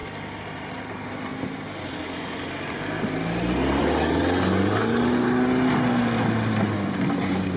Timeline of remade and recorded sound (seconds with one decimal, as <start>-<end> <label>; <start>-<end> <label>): 0.0-7.6 recorded